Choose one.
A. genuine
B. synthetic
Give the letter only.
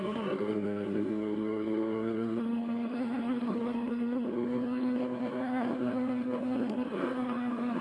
B